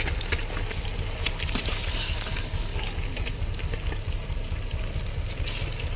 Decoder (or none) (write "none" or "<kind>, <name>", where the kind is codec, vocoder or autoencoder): none